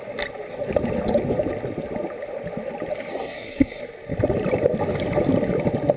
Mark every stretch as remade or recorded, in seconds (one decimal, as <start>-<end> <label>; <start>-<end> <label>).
0.0-3.1 recorded; 3.1-3.8 remade; 3.8-6.0 recorded